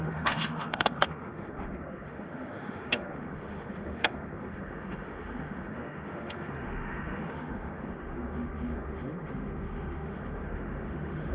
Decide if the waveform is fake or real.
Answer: fake